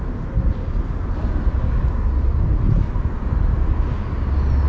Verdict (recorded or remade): recorded